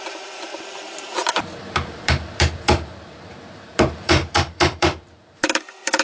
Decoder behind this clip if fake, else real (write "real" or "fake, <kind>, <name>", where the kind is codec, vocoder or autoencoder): fake, vocoder, BigVGAN v2